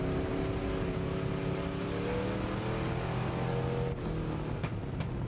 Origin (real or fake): real